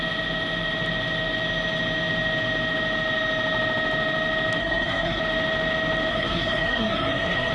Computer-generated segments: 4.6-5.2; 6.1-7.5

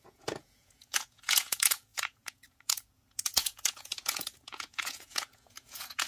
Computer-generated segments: 0.0-6.1

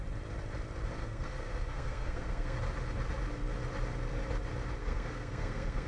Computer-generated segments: 1.0-2.6; 4.8-5.9

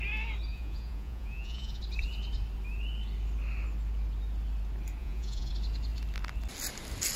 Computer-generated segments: 0.5-1.8; 5.0-5.5

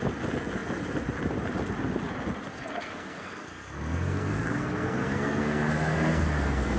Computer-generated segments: 2.5-6.8

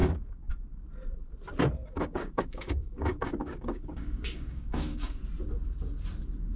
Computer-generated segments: 0.0-0.5; 1.8-5.2